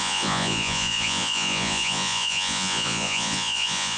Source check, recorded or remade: remade